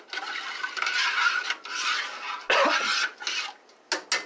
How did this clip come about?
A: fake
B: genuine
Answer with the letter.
B